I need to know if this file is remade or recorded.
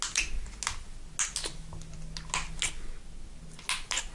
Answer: recorded